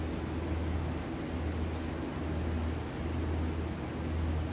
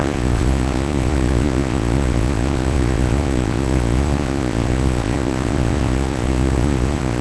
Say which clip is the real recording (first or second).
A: first